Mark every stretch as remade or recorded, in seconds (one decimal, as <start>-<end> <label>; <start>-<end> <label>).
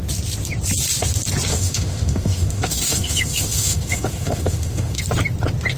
0.0-1.5 recorded; 1.5-5.0 remade; 5.0-5.8 recorded